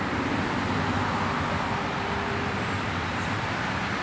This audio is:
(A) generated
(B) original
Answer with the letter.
B